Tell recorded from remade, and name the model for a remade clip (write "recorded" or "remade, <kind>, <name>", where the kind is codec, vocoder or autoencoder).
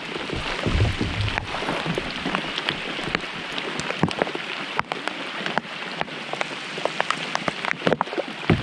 recorded